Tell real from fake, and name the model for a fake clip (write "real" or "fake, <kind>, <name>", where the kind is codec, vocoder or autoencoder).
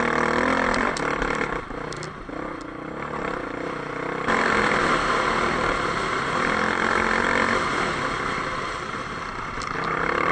real